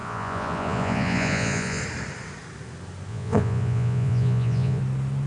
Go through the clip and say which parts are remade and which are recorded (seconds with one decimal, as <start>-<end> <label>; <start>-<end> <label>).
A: 0.0-1.8 remade; 1.8-3.1 recorded; 3.1-4.8 remade; 4.8-5.3 recorded